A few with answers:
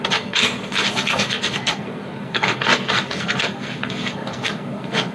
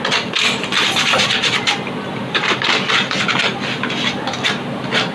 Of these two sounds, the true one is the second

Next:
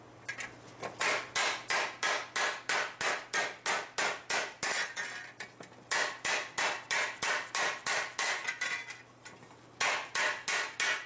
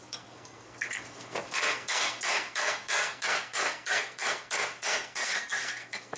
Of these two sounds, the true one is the first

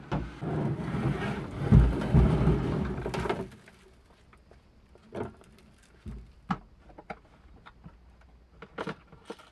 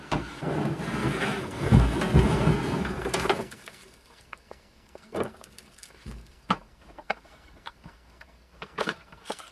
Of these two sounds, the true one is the first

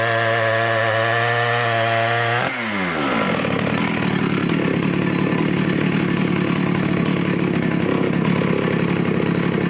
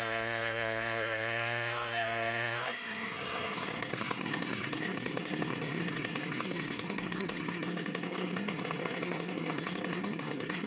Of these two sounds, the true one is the first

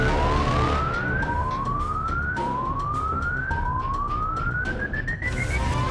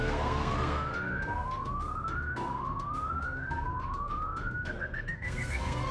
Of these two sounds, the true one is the first